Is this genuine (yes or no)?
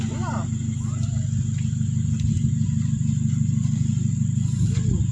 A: yes